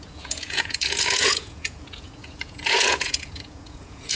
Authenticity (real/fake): fake